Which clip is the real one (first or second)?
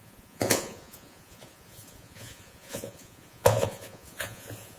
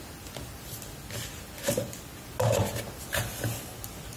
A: second